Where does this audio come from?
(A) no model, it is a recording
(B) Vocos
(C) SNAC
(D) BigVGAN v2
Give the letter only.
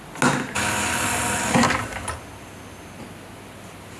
A